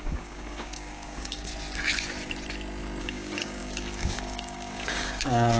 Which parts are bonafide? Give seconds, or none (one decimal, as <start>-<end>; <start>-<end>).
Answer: 1.5-3.0